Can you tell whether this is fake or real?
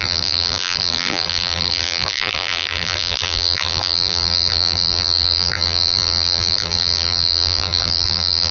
fake